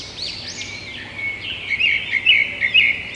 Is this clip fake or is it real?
real